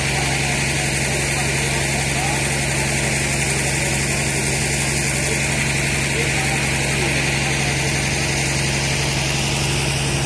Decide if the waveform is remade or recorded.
recorded